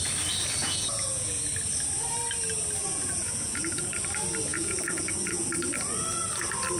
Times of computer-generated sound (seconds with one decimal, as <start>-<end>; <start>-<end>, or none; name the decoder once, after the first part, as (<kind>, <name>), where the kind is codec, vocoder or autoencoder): 0.6-1.4 (vocoder, Vocos); 2.8-3.9; 4.5-5.5